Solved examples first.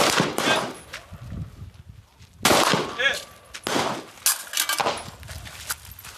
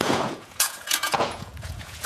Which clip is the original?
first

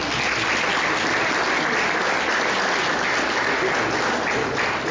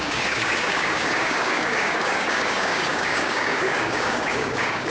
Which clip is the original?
first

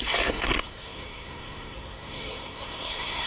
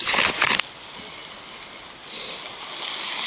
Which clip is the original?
second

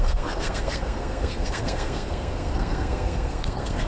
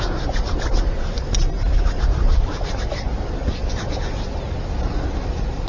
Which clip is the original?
second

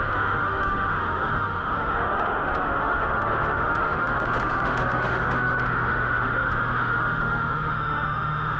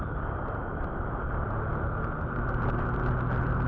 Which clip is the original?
second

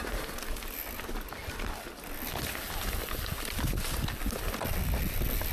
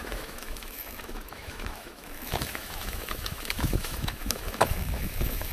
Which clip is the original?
first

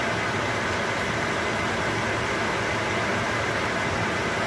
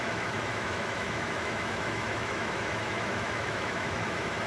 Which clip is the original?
first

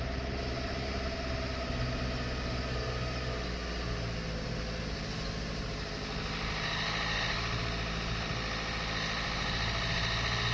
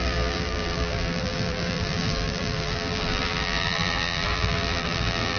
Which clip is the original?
first